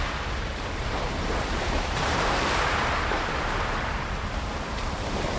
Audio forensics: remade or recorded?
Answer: remade